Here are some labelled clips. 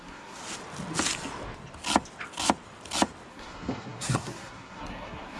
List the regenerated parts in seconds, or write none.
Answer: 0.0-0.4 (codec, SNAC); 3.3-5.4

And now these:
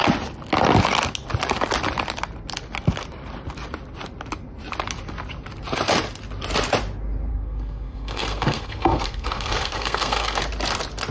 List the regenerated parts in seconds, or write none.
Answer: 7.3-10.4 (codec, SNAC)